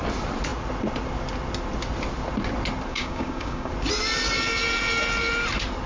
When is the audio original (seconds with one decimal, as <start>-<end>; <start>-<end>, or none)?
0.0-2.9; 3.7-5.9

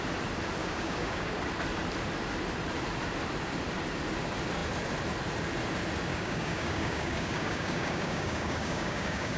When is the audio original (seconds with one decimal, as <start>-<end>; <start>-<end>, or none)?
0.0-0.6; 1.4-6.1

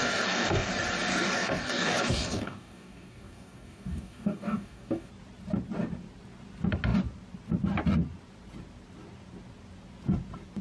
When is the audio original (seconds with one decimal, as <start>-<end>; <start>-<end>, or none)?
0.7-1.1; 5.1-10.6

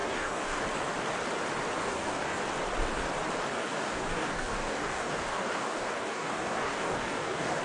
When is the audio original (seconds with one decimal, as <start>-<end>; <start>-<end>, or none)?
0.6-1.8; 2.4-3.5

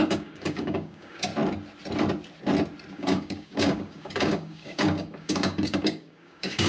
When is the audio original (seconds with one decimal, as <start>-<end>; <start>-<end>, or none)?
1.3-2.9

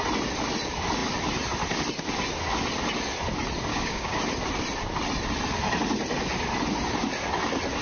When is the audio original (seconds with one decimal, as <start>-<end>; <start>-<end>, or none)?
0.0-3.7; 4.2-7.8